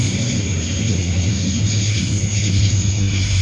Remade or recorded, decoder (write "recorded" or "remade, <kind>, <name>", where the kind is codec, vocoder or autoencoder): remade, codec, SNAC